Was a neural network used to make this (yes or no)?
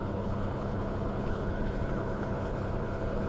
yes